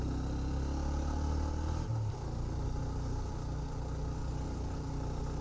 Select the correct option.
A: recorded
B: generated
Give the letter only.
A